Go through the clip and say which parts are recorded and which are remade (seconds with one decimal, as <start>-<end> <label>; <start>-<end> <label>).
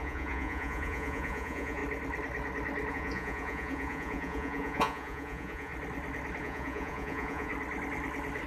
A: 0.0-1.8 remade; 1.8-2.9 recorded; 2.9-5.7 remade; 5.7-6.4 recorded; 6.4-7.5 remade; 7.5-8.5 recorded